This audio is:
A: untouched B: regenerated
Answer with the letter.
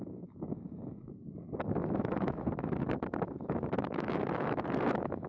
B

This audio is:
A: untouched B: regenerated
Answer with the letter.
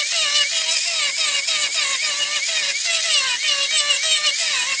A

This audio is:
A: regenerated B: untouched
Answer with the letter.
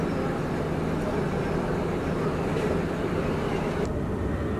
B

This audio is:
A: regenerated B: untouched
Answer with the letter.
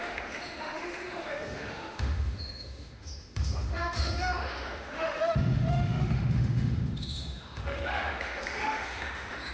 A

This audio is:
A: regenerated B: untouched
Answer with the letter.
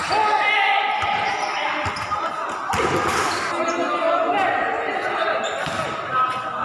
B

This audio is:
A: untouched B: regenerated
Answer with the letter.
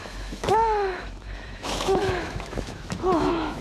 B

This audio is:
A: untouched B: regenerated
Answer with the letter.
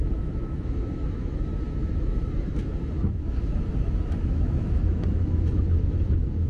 B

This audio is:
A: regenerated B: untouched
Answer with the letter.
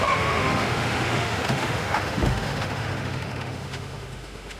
A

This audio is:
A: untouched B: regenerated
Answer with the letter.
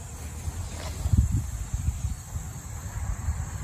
A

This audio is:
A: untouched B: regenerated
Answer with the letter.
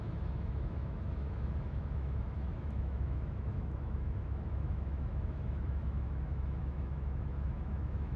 B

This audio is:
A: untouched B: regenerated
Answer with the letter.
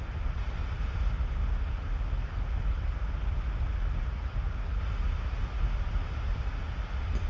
A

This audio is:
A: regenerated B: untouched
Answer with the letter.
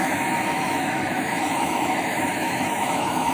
A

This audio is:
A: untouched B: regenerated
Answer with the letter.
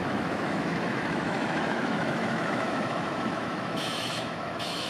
B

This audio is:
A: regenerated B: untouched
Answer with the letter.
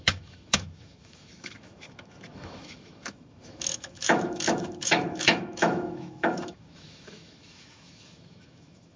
A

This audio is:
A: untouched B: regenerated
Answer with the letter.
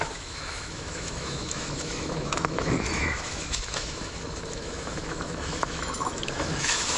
B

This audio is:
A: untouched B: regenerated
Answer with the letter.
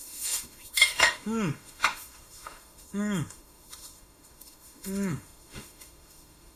B